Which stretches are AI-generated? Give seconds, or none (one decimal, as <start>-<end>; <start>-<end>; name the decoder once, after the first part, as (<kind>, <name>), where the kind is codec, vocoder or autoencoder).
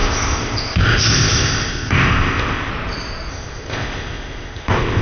0.0-2.7 (codec, ZipCodec); 3.3-5.0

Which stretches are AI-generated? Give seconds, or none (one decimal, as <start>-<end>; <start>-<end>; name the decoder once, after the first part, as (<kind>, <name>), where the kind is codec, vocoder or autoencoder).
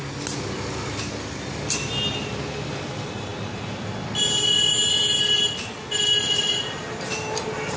none